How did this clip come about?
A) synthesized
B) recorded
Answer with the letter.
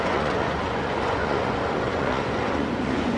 A